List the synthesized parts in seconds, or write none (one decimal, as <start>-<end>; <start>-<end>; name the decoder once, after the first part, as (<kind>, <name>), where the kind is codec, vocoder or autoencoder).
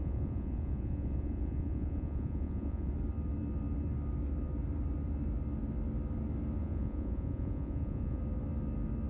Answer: 0.0-2.9 (vocoder, Vocos); 6.6-8.2